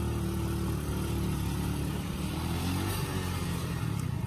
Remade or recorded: recorded